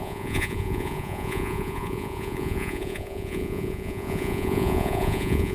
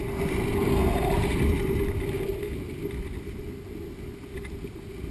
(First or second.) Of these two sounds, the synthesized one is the first